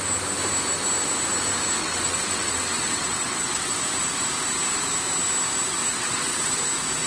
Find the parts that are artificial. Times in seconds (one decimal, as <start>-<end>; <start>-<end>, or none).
1.8-3.8; 5.8-6.6